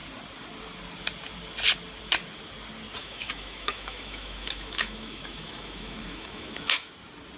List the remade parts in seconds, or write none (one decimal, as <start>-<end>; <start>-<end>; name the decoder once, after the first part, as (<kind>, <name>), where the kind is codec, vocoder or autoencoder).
3.0-6.9 (autoencoder, DAC-VAE)